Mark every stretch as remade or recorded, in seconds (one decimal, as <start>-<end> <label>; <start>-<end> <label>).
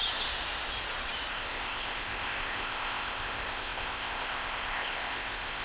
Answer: 0.0-1.3 recorded; 1.3-5.6 remade